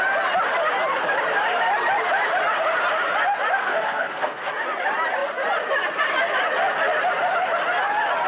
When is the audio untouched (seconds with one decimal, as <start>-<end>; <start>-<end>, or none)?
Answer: 0.0-3.5; 4.5-8.3